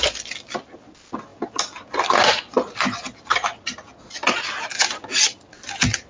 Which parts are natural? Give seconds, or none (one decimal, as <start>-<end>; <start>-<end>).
0.0-6.1